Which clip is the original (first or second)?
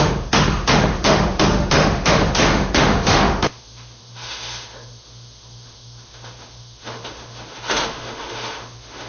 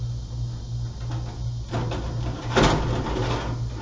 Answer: second